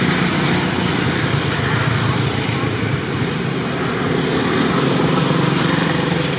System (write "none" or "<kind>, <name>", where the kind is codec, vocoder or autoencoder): none